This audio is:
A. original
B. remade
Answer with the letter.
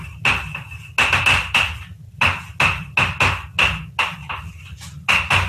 A